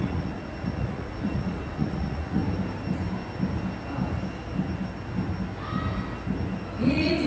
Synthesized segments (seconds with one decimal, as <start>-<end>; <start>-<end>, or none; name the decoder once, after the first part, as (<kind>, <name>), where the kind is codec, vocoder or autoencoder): 0.0-2.4 (vocoder, Vocos); 6.8-7.3